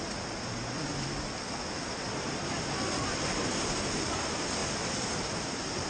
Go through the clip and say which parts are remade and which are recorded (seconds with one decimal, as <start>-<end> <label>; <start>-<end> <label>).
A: 0.0-0.9 remade; 0.9-3.3 recorded; 3.3-4.6 remade; 4.6-5.4 recorded; 5.4-5.9 remade